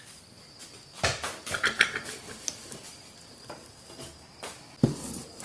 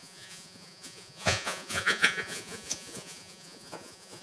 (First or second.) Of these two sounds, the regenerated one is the second